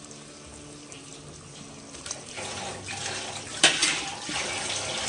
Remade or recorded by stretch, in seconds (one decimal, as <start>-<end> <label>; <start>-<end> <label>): 0.0-1.1 remade; 1.1-1.9 recorded; 1.9-3.8 remade; 3.8-4.6 recorded; 4.6-5.1 remade